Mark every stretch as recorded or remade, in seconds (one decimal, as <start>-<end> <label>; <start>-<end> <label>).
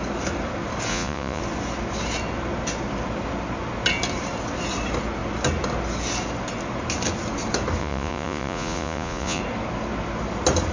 0.0-0.9 recorded; 0.9-1.4 remade; 1.4-7.8 recorded; 7.8-9.4 remade; 9.4-10.7 recorded